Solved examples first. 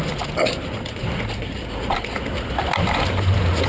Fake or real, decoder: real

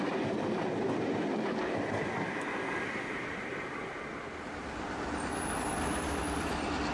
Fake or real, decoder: real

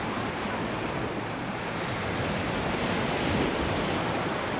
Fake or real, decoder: real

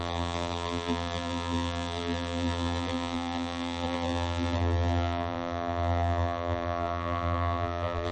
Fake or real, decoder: fake, vocoder, BigVGAN v2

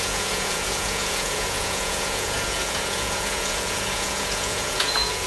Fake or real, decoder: fake, vocoder, Vocos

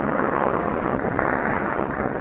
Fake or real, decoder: fake, vocoder, WaveNeXt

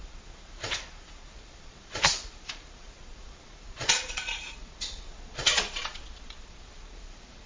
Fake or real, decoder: fake, vocoder, Vocos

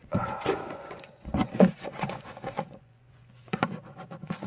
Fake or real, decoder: fake, vocoder, Vocos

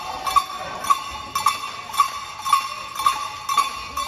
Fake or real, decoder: real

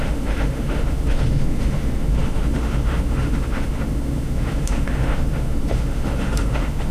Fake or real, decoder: fake, autoencoder, DAC-VAE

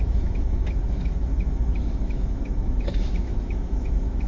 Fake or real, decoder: fake, autoencoder, DAC-VAE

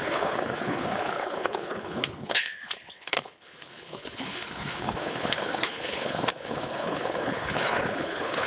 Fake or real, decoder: fake, codec, HILCodec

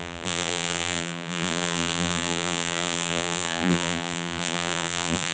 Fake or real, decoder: fake, vocoder, BigVGAN v2